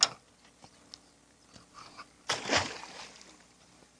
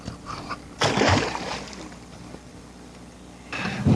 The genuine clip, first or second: first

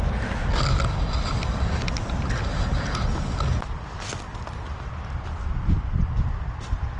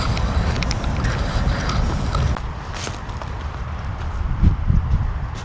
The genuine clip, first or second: first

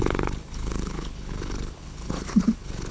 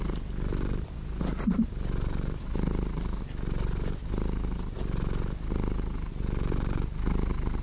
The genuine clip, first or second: second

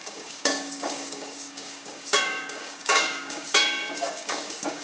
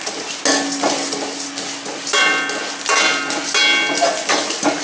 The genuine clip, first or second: second